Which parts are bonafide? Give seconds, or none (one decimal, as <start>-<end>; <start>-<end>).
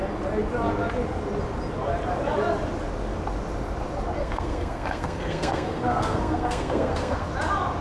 0.0-4.2; 7.3-7.8